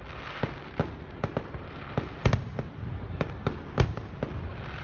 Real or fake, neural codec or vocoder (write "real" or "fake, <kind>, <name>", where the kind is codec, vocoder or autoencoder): real